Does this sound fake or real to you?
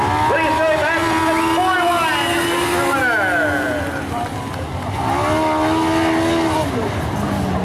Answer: real